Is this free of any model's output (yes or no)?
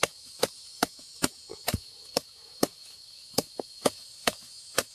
no